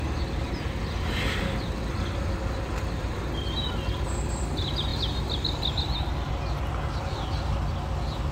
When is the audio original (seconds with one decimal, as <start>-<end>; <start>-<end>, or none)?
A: 0.0-8.3